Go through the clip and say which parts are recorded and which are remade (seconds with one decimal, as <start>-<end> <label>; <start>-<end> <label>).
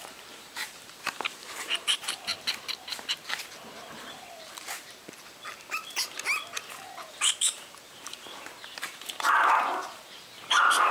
0.0-2.3 remade; 2.3-7.1 recorded; 7.1-10.9 remade